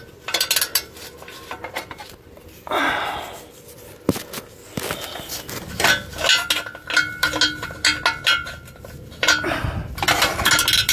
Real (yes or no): yes